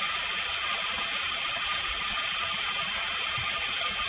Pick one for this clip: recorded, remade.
recorded